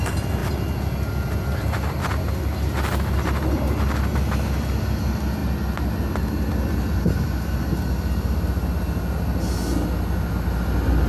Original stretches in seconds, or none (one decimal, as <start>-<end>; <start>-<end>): 0.0-11.1